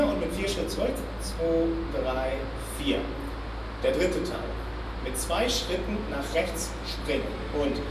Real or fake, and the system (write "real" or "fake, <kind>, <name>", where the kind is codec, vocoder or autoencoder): real